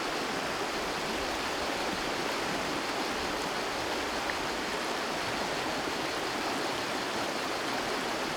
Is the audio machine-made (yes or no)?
no